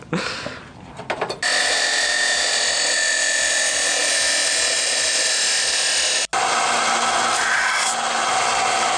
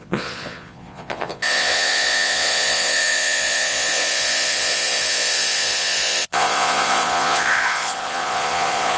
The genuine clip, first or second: first